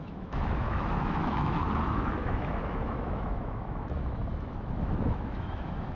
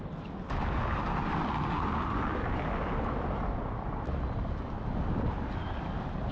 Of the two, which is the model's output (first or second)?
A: first